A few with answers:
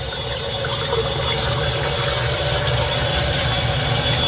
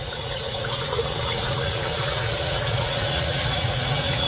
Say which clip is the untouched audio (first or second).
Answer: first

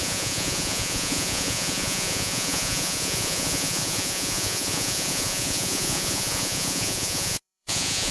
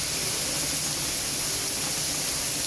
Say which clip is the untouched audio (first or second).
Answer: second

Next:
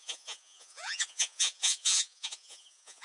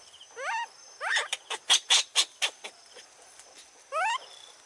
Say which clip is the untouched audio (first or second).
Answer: second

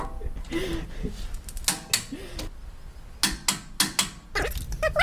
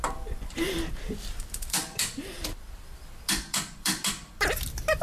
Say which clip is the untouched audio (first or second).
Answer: first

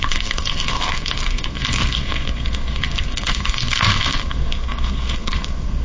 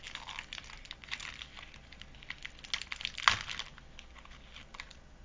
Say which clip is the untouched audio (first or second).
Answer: second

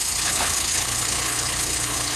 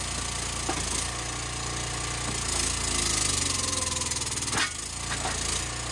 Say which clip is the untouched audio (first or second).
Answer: second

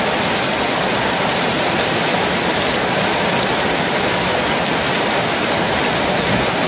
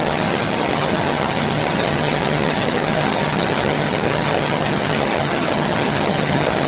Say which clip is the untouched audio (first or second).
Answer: first